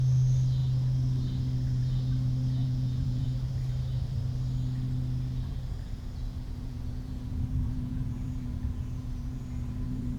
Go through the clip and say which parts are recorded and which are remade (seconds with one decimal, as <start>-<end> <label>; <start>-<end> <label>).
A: 0.0-2.6 recorded; 2.6-3.5 remade; 3.5-5.5 recorded; 5.5-10.2 remade